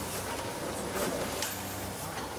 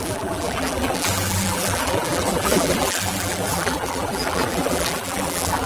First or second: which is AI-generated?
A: second